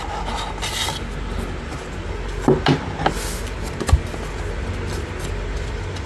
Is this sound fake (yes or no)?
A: no